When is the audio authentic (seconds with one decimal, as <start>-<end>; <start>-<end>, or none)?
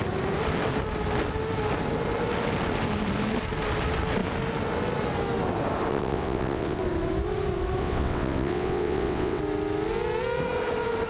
0.0-5.9; 6.8-7.8; 9.4-11.1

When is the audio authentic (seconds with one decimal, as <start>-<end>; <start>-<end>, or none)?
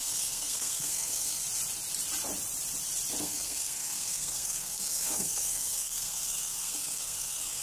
1.4-3.2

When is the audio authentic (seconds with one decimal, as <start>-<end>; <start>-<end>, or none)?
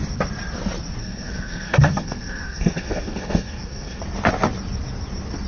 0.0-1.0; 4.0-5.5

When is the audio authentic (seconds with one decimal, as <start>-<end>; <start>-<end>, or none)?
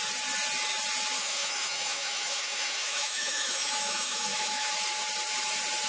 0.0-1.2; 4.7-5.9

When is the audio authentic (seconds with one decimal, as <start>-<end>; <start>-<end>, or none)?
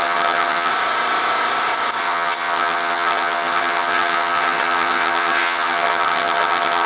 0.7-2.0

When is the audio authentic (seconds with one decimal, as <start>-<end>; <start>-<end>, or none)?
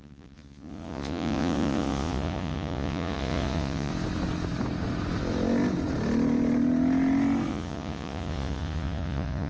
3.9-7.5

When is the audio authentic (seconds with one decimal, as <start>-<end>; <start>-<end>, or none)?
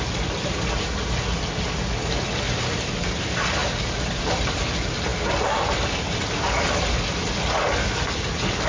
0.0-8.7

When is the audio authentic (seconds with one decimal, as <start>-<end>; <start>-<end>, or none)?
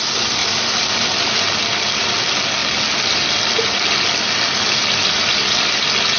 0.0-6.2